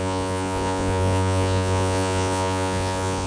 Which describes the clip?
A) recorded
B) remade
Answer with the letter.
B